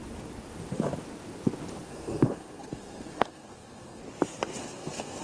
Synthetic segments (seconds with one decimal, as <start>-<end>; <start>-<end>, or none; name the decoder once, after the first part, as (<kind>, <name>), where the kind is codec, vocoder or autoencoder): 1.8-4.0 (codec, SNAC); 4.6-5.2